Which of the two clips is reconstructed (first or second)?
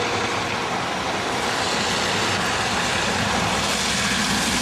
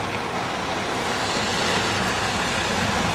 first